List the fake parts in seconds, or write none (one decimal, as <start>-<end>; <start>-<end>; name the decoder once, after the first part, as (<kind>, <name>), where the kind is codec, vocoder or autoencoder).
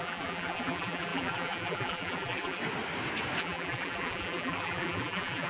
0.0-2.6 (vocoder, BigVGAN v2); 3.4-5.5